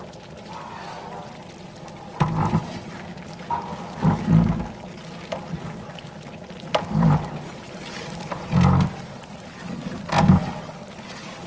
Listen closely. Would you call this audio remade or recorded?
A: recorded